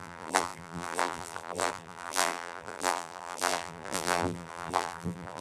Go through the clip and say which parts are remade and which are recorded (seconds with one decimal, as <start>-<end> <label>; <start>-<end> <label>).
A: 0.0-5.4 remade